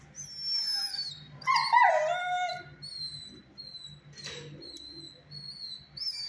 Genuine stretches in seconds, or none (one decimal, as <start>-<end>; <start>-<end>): 0.0-6.3